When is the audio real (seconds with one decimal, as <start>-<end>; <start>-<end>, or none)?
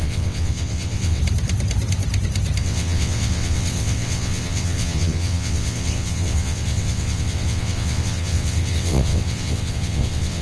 1.2-2.6